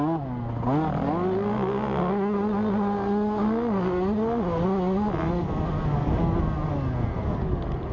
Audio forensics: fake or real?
real